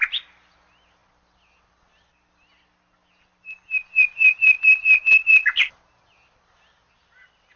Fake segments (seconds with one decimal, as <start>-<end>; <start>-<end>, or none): none